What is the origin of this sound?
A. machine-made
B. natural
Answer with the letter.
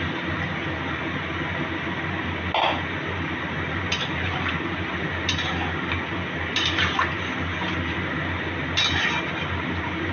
B